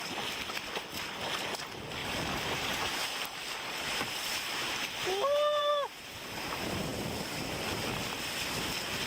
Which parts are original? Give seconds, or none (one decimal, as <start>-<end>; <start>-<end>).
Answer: 0.0-2.0; 5.6-9.1